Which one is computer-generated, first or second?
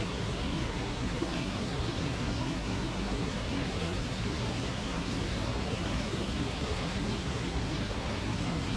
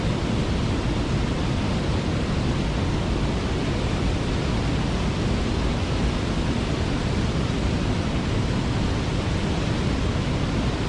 first